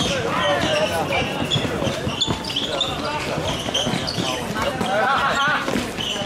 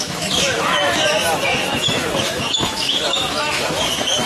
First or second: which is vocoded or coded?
second